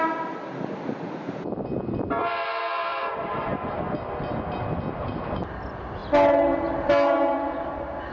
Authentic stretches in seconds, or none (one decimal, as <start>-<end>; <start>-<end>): 0.0-2.9; 3.8-8.1